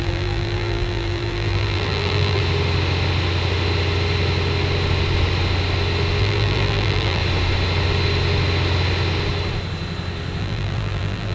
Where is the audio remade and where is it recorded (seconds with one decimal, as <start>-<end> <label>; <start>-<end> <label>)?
0.0-2.4 remade; 2.4-6.2 recorded; 6.2-7.2 remade; 7.2-10.4 recorded; 10.4-11.3 remade